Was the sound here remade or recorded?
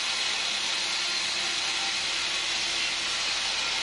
recorded